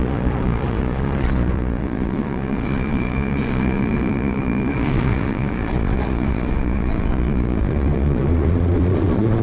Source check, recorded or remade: remade